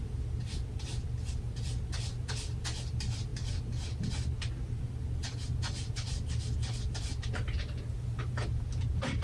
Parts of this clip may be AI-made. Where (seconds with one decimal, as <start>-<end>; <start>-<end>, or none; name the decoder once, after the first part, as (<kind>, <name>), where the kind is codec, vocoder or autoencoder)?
none